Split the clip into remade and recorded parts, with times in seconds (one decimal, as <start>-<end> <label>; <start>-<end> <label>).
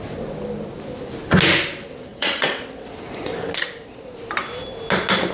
0.0-2.1 recorded; 2.1-2.9 remade; 2.9-5.3 recorded